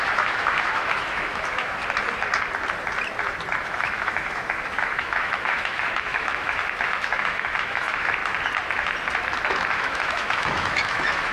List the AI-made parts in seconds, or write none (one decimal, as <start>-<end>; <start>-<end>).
0.0-1.8; 3.6-8.2; 9.7-11.3